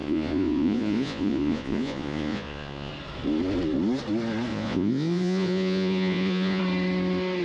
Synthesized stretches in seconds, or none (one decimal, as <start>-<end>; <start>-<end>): 0.0-2.9; 4.5-6.6